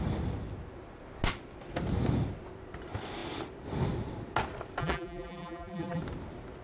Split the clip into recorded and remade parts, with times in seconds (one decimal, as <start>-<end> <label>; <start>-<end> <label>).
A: 0.0-4.8 recorded; 4.8-6.0 remade; 6.0-6.6 recorded